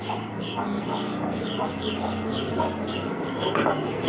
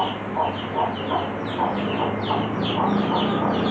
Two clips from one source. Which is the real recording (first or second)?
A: second